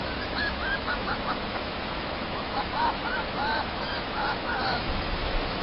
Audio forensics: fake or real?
fake